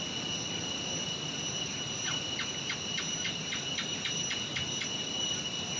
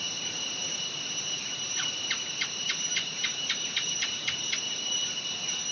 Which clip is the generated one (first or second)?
second